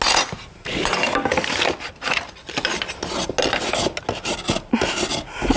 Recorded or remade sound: recorded